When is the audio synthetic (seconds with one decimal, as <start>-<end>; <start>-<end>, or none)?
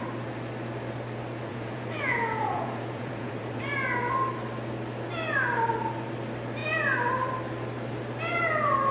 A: 1.5-3.6